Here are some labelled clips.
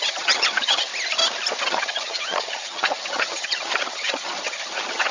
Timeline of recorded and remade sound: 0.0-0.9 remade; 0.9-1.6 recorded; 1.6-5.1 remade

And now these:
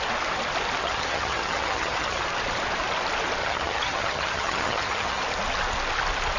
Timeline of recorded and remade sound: 0.0-0.8 recorded; 0.8-2.2 remade; 2.2-3.4 recorded; 3.4-5.2 remade; 5.2-6.4 recorded